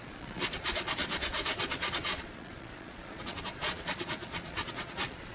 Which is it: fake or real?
fake